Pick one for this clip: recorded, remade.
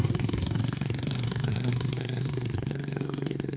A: remade